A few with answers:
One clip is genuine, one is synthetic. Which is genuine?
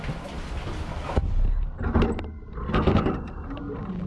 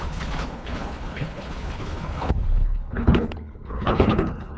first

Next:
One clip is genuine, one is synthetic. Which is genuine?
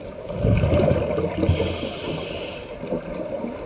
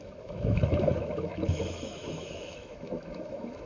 first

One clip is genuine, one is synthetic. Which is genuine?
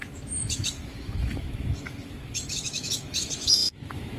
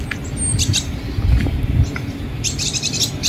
second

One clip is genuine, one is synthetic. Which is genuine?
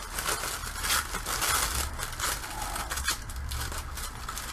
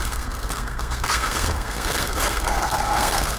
first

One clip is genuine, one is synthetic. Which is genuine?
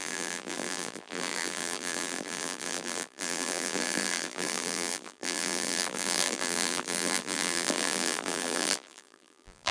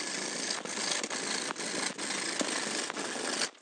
second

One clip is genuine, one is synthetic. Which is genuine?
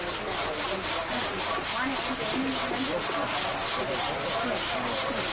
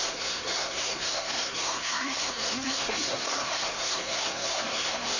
first